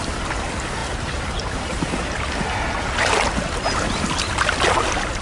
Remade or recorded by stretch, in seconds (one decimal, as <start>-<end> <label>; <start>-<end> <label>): 0.0-5.2 recorded